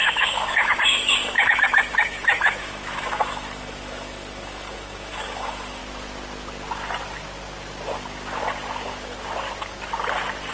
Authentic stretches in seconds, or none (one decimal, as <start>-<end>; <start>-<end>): 5.8-10.5